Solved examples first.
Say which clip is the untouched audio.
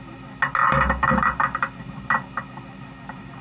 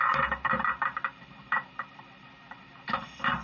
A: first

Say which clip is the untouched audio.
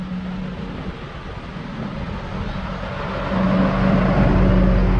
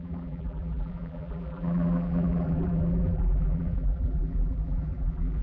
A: first